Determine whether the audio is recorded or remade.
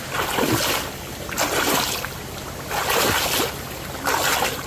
recorded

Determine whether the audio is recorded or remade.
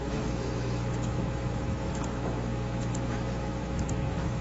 remade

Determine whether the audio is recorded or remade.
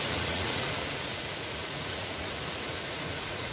remade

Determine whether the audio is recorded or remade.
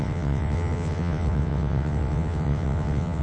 remade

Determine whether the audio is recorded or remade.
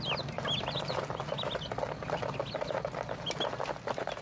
recorded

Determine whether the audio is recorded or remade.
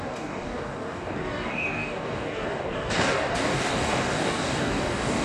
remade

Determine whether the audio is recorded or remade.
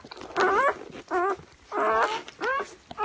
recorded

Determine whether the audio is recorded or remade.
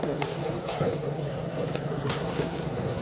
remade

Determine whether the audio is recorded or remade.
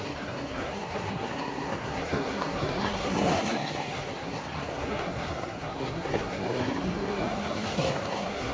remade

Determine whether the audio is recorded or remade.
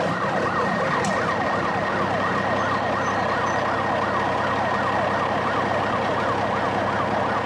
recorded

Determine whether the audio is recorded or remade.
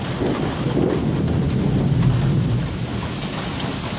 recorded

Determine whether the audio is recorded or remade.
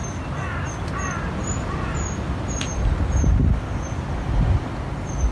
recorded